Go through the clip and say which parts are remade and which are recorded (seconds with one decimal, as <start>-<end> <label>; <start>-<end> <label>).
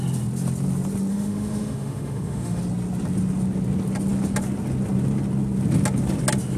0.0-1.1 recorded; 1.1-2.6 remade; 2.6-6.6 recorded